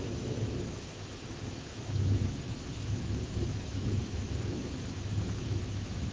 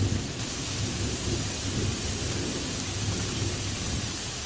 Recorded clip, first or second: second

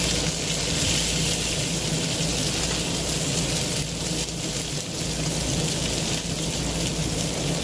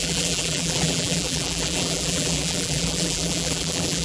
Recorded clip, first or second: first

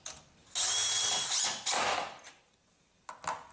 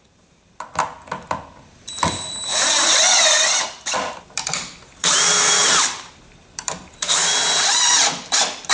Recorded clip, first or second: first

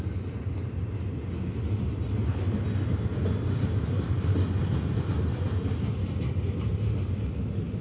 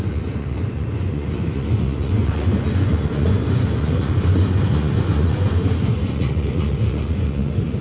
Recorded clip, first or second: first